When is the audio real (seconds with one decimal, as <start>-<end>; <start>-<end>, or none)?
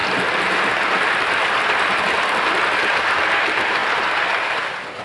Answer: 0.0-5.0